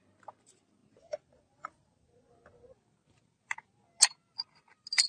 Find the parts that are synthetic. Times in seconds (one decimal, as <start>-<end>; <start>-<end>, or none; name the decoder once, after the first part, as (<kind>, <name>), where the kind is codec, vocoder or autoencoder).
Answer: none